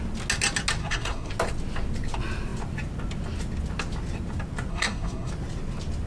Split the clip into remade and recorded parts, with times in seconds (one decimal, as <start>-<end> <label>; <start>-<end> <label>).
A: 0.0-0.8 recorded; 0.8-1.3 remade; 1.3-4.7 recorded; 4.7-5.3 remade; 5.3-6.1 recorded